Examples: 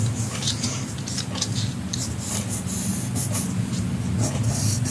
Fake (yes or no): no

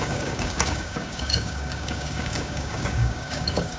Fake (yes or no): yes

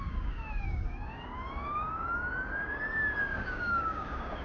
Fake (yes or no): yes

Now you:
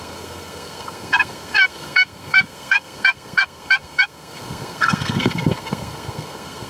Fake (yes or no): yes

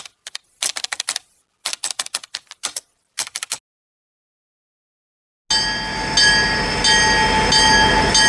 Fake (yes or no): no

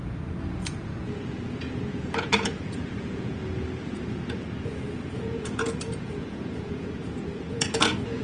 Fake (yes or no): yes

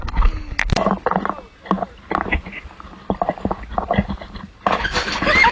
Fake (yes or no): no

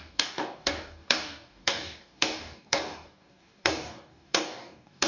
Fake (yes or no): yes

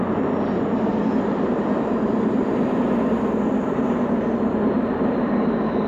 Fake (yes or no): no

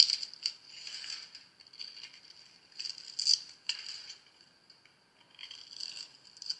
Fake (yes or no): no